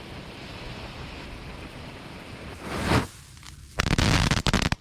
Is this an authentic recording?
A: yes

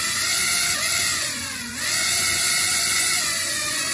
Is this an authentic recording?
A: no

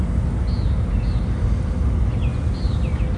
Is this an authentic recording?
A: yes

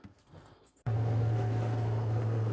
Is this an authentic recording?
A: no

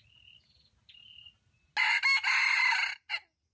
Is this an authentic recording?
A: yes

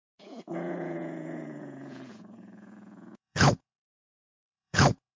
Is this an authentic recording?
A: no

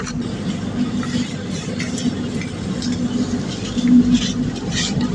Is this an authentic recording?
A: yes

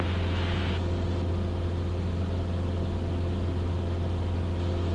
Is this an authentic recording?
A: yes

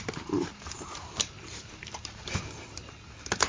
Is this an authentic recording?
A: no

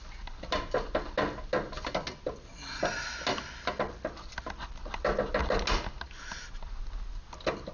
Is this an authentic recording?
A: yes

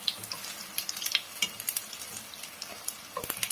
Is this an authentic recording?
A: yes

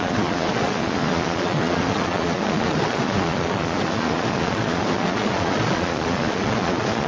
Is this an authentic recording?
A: no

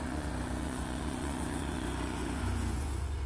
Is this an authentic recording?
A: no